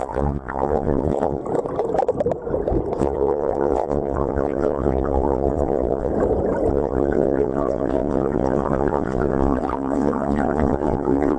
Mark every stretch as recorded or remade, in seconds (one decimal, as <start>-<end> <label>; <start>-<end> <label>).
0.0-1.4 remade; 1.4-3.0 recorded; 3.0-6.1 remade; 6.1-6.7 recorded; 6.7-11.4 remade